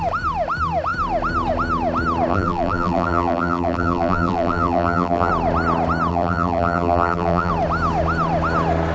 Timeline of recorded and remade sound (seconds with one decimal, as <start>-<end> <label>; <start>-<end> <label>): 0.0-2.3 recorded; 2.3-5.3 remade; 5.3-6.1 recorded; 6.1-7.5 remade; 7.5-8.9 recorded